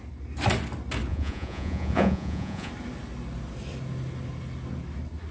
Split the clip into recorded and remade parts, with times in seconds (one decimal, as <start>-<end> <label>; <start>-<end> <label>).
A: 0.0-1.1 recorded; 1.1-2.7 remade; 2.7-5.3 recorded